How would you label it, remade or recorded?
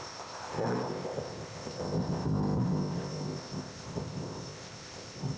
remade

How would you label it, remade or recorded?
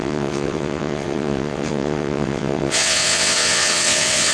remade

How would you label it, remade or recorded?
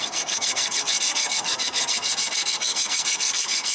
remade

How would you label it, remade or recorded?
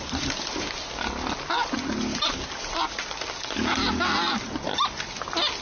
recorded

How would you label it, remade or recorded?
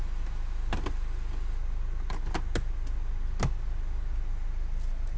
recorded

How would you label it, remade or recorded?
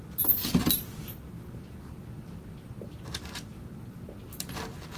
recorded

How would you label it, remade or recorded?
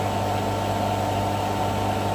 recorded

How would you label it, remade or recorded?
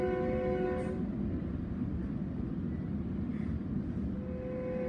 recorded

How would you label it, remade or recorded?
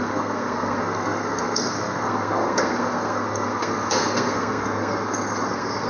remade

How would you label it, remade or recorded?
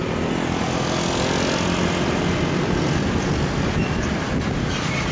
recorded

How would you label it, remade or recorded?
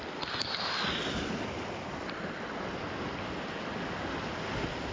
recorded